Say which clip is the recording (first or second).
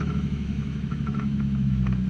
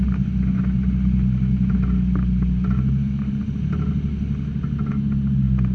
second